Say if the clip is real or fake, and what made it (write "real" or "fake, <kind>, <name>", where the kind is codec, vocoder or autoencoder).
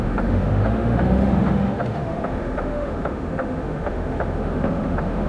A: fake, autoencoder, DAC-VAE